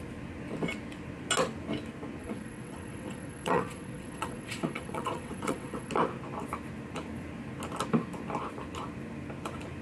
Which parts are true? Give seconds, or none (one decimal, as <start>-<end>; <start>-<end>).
0.0-2.2; 5.9-9.8